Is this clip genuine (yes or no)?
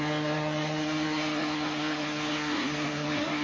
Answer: no